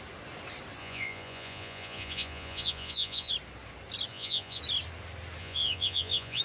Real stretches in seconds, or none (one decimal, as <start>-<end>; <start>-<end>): 0.0-0.8; 3.3-4.1; 4.6-5.4